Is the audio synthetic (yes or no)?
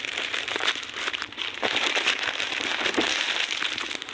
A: yes